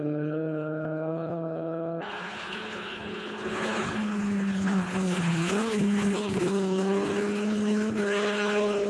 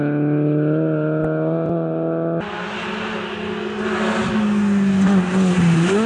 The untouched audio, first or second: second